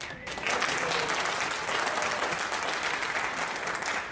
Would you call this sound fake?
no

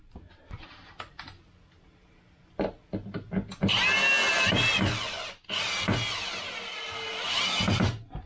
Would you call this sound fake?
no